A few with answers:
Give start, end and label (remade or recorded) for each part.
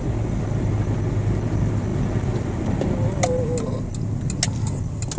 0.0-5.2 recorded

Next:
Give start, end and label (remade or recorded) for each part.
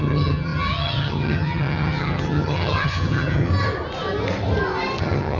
0.0-3.5 remade; 3.5-5.0 recorded; 5.0-5.4 remade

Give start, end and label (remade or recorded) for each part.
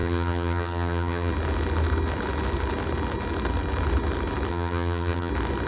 0.0-1.3 remade; 1.3-4.5 recorded; 4.5-5.3 remade; 5.3-5.7 recorded